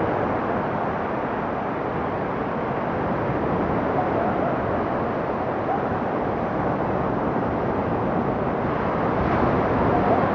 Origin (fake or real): real